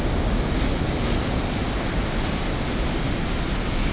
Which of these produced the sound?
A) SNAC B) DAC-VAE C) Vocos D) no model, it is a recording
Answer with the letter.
D